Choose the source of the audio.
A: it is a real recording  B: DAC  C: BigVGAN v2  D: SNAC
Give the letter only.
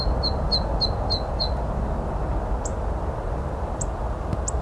A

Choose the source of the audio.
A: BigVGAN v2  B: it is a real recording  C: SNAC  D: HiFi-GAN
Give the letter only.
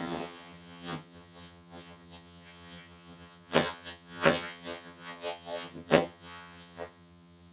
D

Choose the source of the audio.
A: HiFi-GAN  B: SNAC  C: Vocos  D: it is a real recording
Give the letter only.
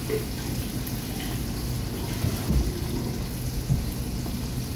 D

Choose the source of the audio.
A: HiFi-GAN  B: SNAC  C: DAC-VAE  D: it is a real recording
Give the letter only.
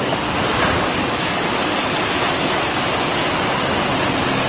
D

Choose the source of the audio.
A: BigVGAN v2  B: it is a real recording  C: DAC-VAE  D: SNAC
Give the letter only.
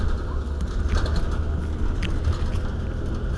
B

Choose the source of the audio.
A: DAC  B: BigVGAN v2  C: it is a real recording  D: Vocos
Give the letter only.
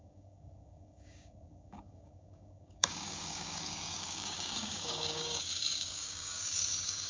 A